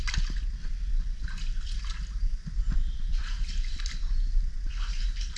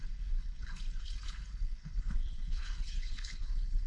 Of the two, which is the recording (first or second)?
first